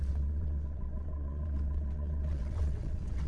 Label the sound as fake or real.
fake